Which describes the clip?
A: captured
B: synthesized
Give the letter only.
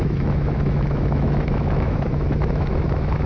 B